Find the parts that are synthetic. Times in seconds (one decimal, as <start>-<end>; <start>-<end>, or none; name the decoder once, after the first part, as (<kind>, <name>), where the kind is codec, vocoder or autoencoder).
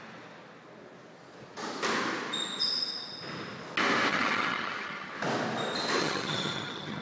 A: 4.1-5.1 (vocoder, HiFi-GAN); 6.0-7.0